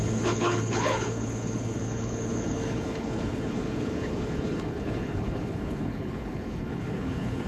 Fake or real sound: fake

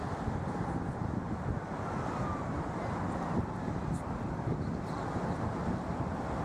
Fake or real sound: real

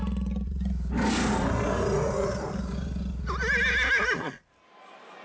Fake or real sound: real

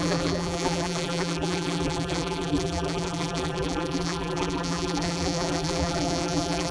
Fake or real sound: fake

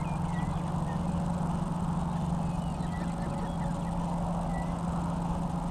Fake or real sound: real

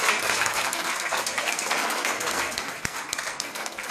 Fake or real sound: fake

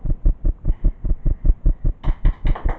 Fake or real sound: real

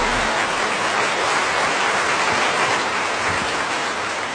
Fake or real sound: real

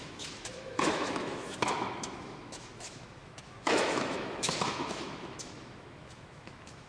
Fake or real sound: fake